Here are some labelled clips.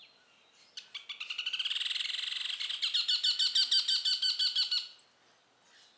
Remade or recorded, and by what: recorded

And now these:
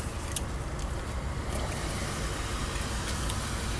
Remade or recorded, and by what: recorded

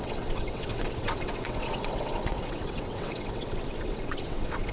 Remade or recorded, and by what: remade, vocoder, WaveNeXt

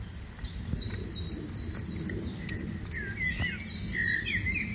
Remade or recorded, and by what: recorded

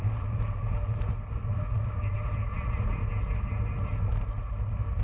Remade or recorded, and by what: recorded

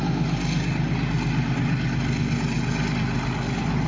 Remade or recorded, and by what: recorded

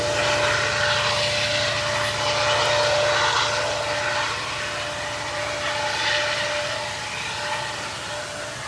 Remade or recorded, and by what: recorded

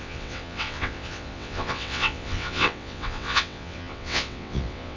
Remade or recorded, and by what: remade, vocoder, WaveNeXt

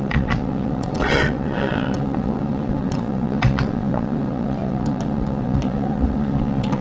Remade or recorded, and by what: remade, vocoder, WaveNeXt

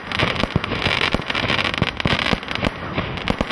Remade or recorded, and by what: recorded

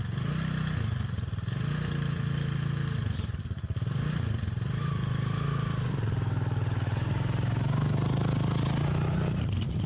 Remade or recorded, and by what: recorded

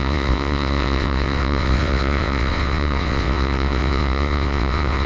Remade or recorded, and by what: remade, vocoder, WaveNeXt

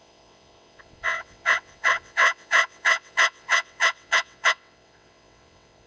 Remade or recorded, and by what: remade, vocoder, WaveNeXt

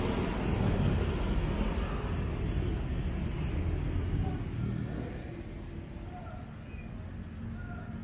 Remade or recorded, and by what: recorded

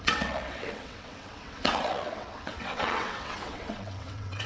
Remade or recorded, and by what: remade, vocoder, WaveNeXt